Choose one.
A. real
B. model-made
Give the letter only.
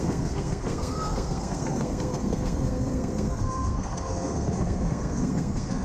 B